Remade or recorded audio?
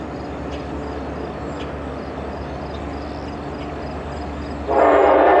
recorded